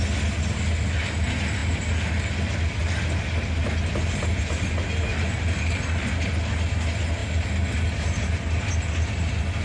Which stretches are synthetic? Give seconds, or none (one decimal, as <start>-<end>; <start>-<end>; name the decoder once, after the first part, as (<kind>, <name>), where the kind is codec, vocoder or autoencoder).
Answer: none